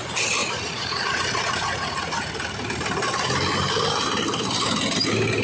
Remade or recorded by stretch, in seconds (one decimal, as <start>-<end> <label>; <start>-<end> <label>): 0.0-0.4 recorded; 0.4-2.3 remade; 2.3-5.4 recorded